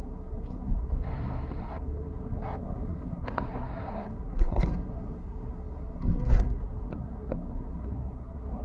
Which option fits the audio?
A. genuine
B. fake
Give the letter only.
B